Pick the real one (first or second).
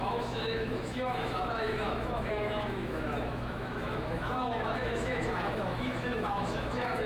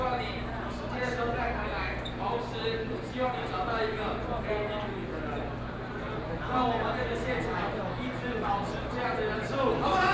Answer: second